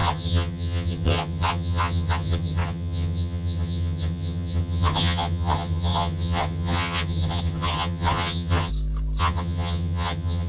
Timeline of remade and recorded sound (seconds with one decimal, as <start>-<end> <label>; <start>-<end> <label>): 0.0-8.7 remade; 8.7-9.2 recorded; 9.2-10.5 remade

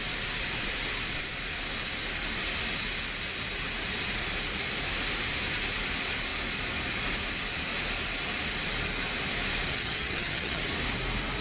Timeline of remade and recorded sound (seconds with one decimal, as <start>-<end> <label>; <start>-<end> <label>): 0.0-9.7 recorded; 9.7-10.6 remade; 10.6-11.4 recorded

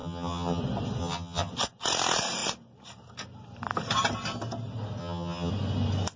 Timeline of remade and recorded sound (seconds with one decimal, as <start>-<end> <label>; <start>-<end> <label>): 0.0-0.6 remade; 0.6-1.0 recorded; 1.0-1.5 remade; 1.5-5.0 recorded; 5.0-5.5 remade; 5.5-6.2 recorded

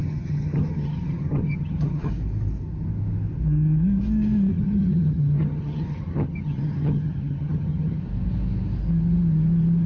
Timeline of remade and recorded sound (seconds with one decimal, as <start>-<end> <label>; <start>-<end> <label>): 0.0-2.1 remade; 2.1-4.5 recorded; 4.5-8.0 remade; 8.0-9.9 recorded

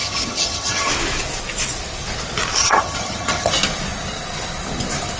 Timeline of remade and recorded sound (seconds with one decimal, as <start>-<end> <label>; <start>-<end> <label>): 0.0-0.9 remade; 0.9-2.6 recorded; 2.6-3.5 remade; 3.5-5.2 recorded

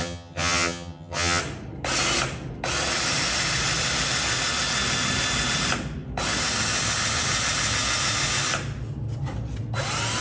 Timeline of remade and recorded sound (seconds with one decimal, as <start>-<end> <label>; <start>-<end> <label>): 0.0-1.4 remade; 1.4-10.2 recorded

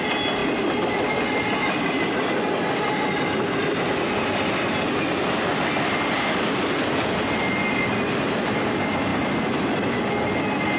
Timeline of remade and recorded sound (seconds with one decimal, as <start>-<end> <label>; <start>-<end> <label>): 0.0-10.8 recorded

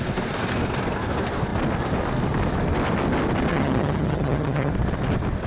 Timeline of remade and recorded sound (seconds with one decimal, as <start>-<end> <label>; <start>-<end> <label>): 0.0-3.5 recorded; 3.5-4.7 remade; 4.7-5.5 recorded